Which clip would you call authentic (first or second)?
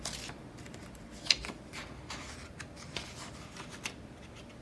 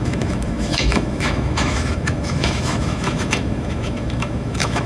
first